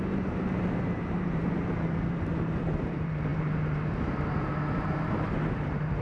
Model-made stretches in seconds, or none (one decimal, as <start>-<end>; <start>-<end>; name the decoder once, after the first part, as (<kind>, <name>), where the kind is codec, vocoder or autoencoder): 0.0-6.0 (vocoder, BigVGAN v2)